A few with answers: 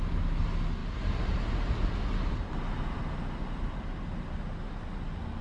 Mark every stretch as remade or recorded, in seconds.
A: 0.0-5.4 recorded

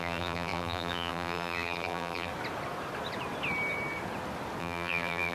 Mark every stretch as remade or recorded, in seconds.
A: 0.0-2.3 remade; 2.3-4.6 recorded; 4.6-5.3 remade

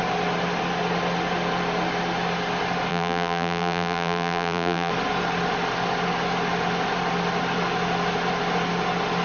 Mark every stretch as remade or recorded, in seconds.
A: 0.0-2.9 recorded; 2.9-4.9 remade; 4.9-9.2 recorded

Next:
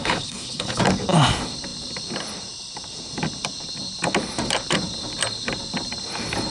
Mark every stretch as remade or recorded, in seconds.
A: 0.0-0.8 remade; 0.8-6.5 recorded

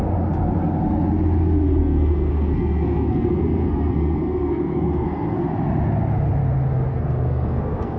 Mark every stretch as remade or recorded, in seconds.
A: 0.0-1.8 recorded; 1.8-5.4 remade; 5.4-6.9 recorded; 6.9-8.0 remade

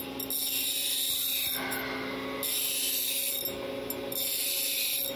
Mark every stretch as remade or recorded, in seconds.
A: 0.0-5.2 recorded

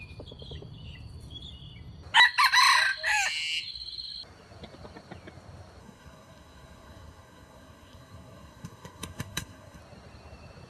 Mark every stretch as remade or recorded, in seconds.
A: 0.0-5.8 recorded; 5.8-9.8 remade; 9.8-10.7 recorded

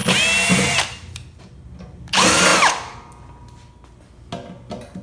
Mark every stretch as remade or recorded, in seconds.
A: 0.0-5.0 recorded